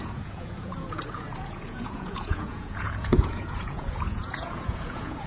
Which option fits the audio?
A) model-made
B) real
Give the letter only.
A